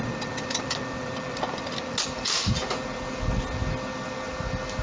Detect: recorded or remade recorded